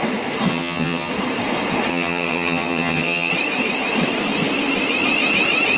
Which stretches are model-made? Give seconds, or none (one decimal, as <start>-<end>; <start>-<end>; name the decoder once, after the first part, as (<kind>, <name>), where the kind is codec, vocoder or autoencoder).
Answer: 0.5-1.1 (vocoder, HiFi-GAN); 1.9-3.3